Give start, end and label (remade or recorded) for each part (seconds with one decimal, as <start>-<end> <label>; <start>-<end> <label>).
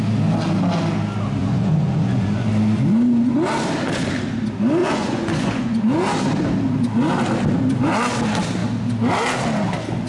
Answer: 0.0-1.4 recorded; 1.4-2.5 remade; 2.5-4.8 recorded; 4.8-5.8 remade; 5.8-10.1 recorded